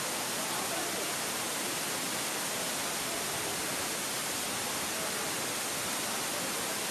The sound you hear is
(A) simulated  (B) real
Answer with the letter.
B